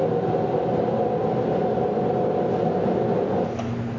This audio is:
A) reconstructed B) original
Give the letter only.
B